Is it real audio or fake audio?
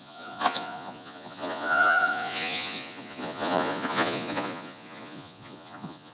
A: fake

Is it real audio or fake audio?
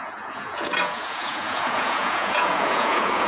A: fake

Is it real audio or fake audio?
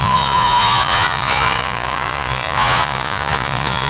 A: fake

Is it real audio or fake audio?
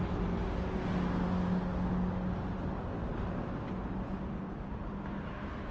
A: real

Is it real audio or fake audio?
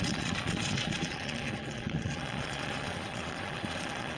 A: fake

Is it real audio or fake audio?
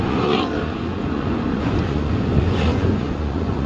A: fake